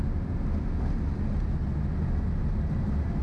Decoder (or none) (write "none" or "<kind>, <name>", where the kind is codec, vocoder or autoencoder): none